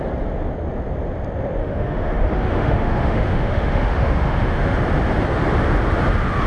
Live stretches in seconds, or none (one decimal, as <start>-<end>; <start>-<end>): 0.0-1.6; 4.8-6.5